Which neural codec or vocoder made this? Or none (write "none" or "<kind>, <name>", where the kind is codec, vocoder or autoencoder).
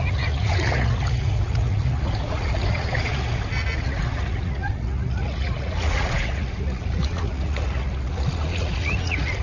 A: vocoder, Vocos